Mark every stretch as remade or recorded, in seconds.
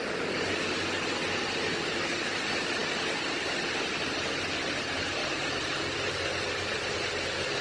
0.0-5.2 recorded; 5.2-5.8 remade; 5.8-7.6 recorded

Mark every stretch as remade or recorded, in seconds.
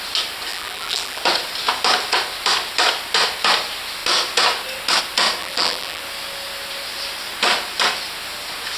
0.0-0.5 recorded; 0.5-1.2 remade; 1.2-5.4 recorded; 5.4-6.0 remade; 6.0-8.8 recorded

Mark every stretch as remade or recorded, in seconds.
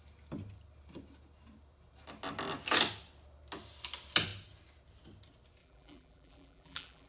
0.0-5.6 recorded; 5.6-7.1 remade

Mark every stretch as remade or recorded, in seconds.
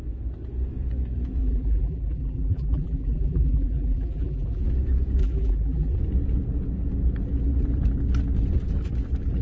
0.0-1.4 recorded; 1.4-4.6 remade; 4.6-5.2 recorded; 5.2-6.0 remade; 6.0-9.4 recorded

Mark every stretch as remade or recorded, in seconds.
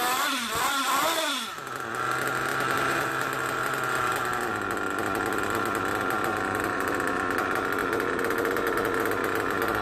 0.0-2.5 recorded; 2.5-3.1 remade; 3.1-6.3 recorded; 6.3-7.1 remade; 7.1-7.8 recorded; 7.8-9.0 remade; 9.0-9.8 recorded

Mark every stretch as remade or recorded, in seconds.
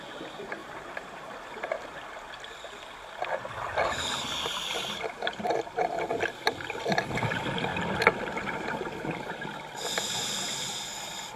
0.0-0.6 recorded; 0.6-1.8 remade; 1.8-11.4 recorded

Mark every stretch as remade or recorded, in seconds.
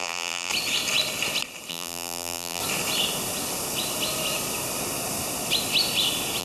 0.0-0.5 remade; 0.5-1.7 recorded; 1.7-2.6 remade; 2.6-6.4 recorded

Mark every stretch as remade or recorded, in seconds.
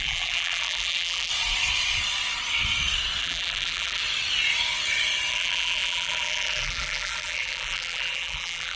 0.0-1.3 remade; 1.3-3.2 recorded; 3.2-4.0 remade; 4.0-5.3 recorded; 5.3-8.8 remade